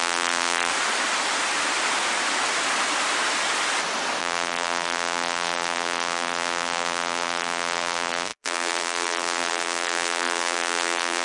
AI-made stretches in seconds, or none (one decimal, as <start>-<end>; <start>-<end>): 0.0-0.7; 4.2-11.2